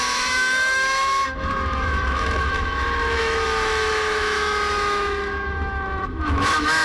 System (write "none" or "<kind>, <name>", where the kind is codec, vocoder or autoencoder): autoencoder, DAC-VAE